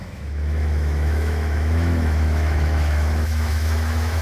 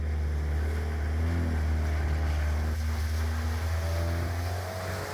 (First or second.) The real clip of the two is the second